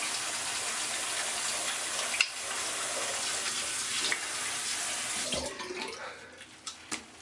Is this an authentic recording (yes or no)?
yes